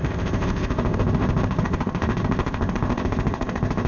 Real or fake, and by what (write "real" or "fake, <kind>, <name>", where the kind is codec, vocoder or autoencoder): fake, codec, ZipCodec